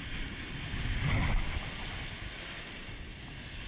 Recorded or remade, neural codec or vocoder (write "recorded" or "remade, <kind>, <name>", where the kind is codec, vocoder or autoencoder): recorded